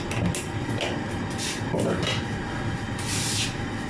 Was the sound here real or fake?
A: real